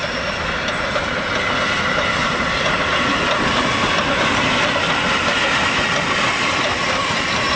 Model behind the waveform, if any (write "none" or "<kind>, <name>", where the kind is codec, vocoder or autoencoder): none